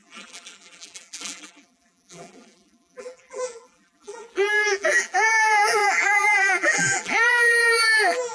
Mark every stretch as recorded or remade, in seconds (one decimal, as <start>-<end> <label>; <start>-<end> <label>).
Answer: 0.0-8.3 remade